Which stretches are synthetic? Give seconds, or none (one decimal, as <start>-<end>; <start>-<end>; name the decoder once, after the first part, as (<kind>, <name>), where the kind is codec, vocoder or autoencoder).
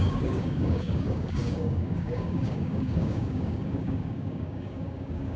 0.0-5.4 (codec, DAC)